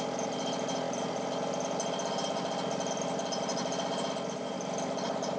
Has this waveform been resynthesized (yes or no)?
no